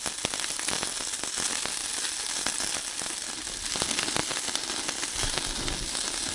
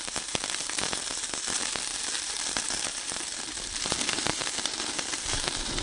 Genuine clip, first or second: first